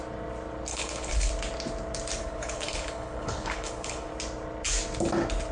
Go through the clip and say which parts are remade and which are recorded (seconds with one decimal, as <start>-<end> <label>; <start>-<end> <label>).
0.0-0.7 recorded; 0.7-1.3 remade; 1.3-2.2 recorded; 2.2-4.1 remade; 4.1-5.5 recorded